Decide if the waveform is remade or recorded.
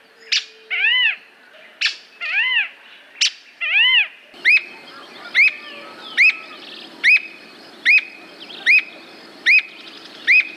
recorded